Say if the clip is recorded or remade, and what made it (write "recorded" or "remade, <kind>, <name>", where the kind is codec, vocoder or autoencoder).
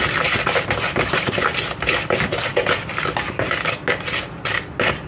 recorded